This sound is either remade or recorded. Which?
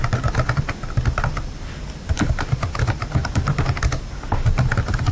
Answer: recorded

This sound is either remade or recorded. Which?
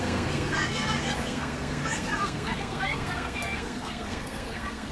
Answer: remade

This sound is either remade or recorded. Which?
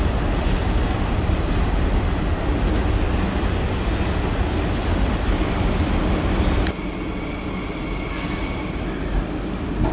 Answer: recorded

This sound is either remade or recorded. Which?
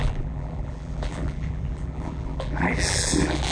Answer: remade